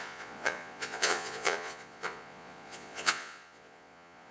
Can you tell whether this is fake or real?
fake